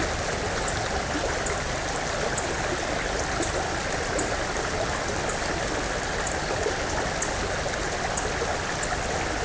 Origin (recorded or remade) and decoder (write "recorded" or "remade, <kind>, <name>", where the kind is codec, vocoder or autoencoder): recorded